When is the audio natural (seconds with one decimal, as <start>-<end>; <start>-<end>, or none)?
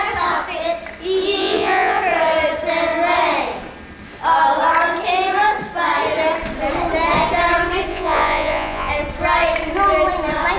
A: 0.0-1.4; 2.0-7.9; 8.9-10.6